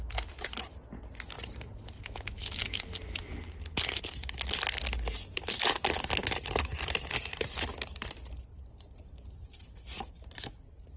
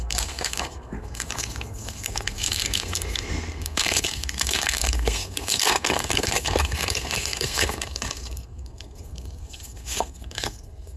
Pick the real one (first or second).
first